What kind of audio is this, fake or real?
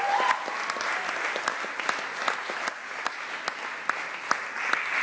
real